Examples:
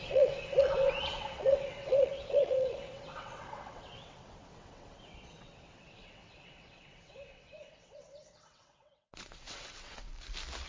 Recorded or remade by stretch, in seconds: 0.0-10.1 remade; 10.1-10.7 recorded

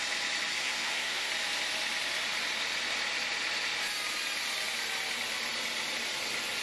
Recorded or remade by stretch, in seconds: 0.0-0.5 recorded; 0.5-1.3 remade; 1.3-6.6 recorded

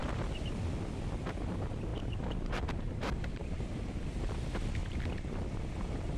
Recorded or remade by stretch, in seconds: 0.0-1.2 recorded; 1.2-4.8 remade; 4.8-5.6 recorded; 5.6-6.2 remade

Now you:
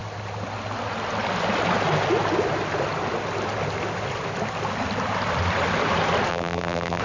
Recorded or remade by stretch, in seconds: 0.0-6.3 recorded; 6.3-7.0 remade

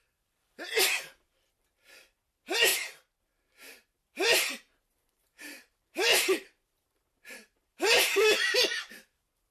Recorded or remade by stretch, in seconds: 0.0-9.5 remade

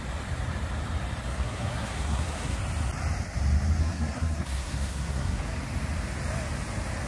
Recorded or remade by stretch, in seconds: 0.0-1.3 recorded; 1.3-2.6 remade; 2.6-3.8 recorded; 3.8-5.4 remade; 5.4-7.1 recorded

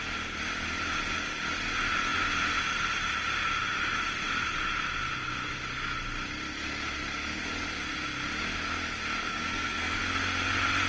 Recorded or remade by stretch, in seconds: 0.0-9.3 recorded; 9.3-10.0 remade; 10.0-10.9 recorded

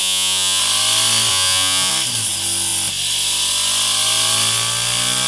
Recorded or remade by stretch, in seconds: 0.0-0.6 remade; 0.6-1.3 recorded; 1.3-1.9 remade; 1.9-5.3 recorded